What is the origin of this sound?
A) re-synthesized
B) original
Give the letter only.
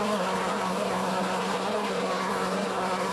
A